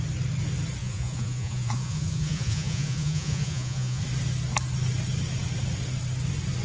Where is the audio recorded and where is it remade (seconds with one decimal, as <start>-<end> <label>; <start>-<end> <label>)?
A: 0.0-0.8 recorded; 0.8-4.0 remade; 4.0-6.6 recorded